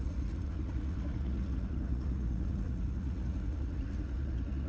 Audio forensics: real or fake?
fake